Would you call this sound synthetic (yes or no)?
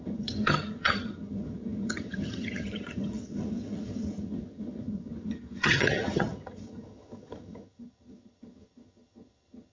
yes